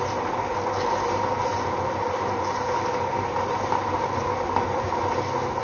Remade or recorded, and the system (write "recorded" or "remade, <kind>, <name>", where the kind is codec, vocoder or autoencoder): recorded